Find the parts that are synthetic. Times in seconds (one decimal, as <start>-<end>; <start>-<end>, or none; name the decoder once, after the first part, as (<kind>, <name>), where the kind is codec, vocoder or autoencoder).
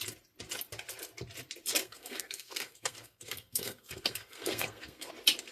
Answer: 1.8-5.1 (codec, SNAC)